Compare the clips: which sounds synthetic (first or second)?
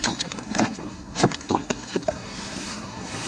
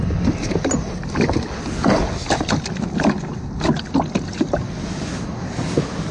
first